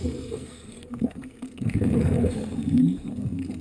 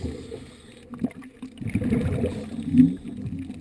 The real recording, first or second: second